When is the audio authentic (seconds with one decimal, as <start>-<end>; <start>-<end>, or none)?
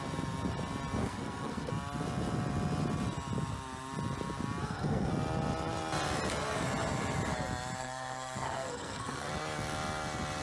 0.0-1.0; 1.7-4.6; 5.1-7.8; 9.3-10.4